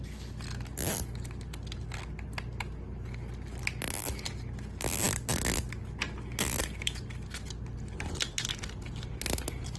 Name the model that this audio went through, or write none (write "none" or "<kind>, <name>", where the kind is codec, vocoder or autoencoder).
none